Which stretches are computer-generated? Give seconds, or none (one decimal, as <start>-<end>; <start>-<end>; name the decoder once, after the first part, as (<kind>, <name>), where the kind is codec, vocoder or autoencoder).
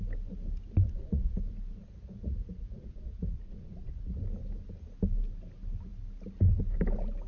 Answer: 0.8-1.4 (vocoder, Vocos); 1.8-4.2